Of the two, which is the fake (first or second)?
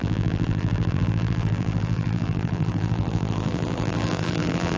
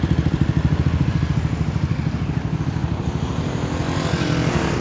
first